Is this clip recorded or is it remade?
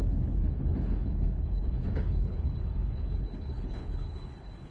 remade